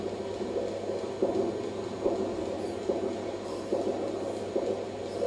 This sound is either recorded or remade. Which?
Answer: recorded